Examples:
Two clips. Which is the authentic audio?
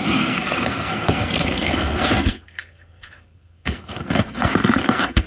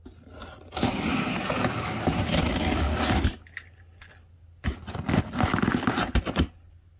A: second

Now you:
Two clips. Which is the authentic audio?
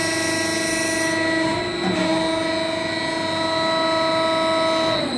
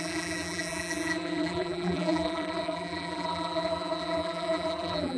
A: first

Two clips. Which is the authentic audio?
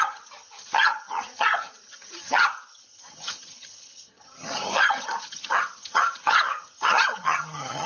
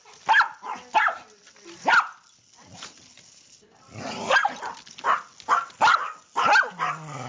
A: second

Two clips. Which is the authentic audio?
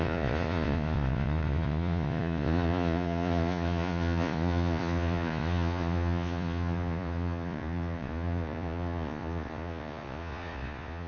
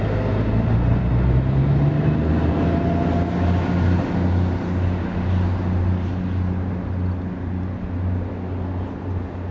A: second